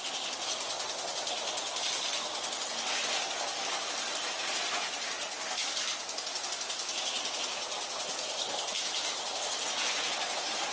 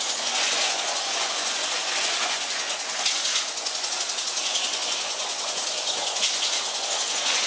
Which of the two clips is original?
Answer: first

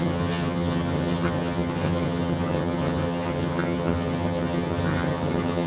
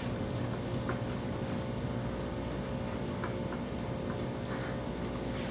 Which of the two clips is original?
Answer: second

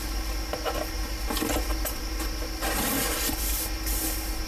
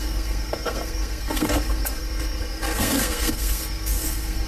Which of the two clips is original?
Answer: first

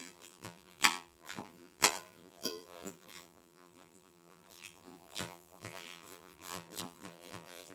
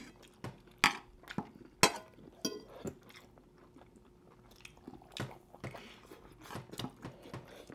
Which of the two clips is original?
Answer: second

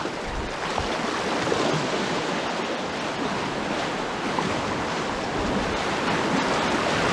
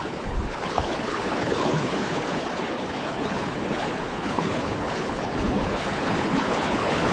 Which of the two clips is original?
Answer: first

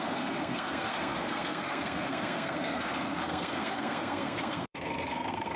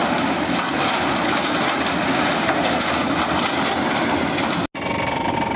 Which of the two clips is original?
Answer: second